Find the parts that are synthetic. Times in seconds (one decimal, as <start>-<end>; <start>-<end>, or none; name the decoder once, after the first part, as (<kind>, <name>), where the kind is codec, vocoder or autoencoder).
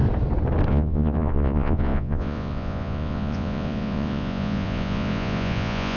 0.7-6.0 (vocoder, Vocos)